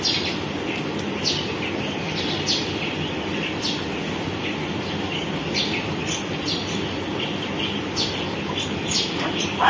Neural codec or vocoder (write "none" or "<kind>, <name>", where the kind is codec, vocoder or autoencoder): none